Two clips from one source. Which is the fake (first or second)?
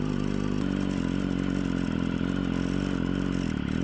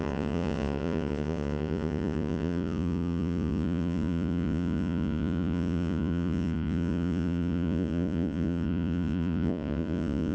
second